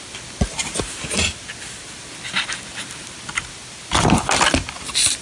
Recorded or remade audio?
recorded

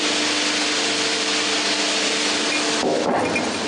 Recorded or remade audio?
recorded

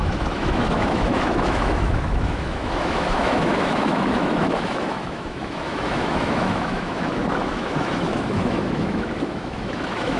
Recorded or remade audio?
remade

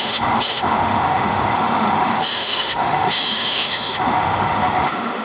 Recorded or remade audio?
remade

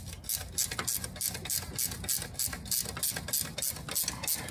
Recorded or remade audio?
recorded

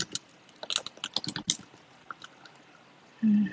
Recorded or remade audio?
recorded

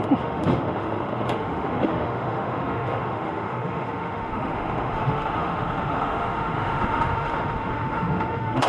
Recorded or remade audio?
remade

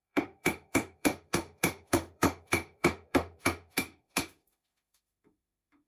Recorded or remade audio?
remade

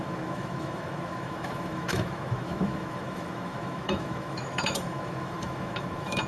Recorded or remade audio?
remade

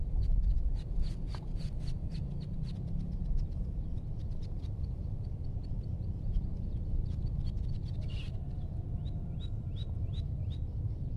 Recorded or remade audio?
recorded